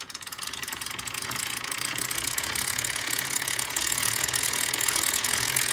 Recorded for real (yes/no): no